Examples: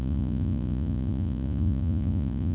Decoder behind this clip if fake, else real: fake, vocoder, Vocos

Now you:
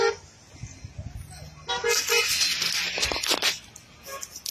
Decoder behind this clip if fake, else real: real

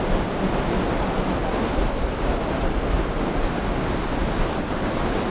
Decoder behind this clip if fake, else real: real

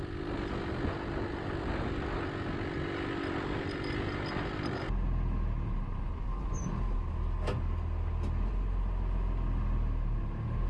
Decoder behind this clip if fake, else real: real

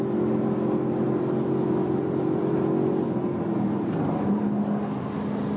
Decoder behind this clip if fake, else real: real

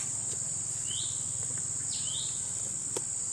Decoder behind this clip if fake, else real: real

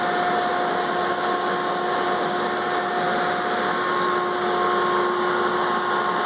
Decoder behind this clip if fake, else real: real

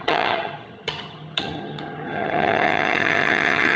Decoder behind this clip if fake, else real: fake, vocoder, HiFi-GAN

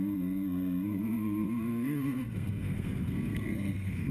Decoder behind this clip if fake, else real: fake, codec, SNAC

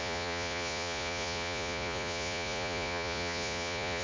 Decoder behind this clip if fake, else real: fake, vocoder, Vocos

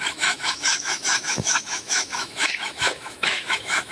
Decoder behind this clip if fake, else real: fake, autoencoder, DAC-VAE